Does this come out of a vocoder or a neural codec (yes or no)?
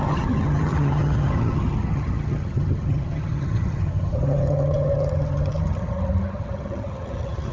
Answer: yes